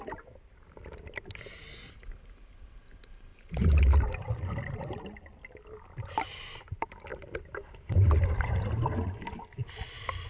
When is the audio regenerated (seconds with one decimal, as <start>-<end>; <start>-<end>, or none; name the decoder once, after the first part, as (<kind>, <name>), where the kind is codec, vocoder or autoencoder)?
none